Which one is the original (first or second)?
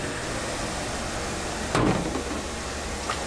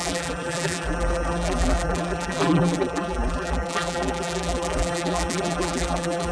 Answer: first